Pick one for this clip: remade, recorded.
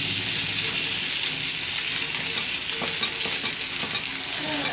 recorded